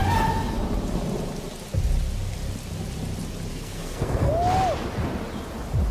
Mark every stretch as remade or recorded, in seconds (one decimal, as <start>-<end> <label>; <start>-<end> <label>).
0.0-3.5 recorded; 3.5-4.3 remade; 4.3-5.9 recorded